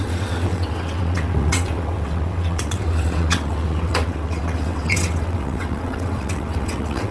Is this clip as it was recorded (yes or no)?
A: no